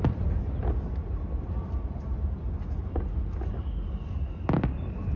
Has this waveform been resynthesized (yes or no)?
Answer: no